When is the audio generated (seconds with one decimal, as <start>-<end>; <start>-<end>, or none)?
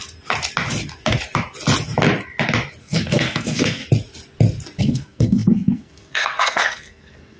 2.8-3.8; 4.8-7.4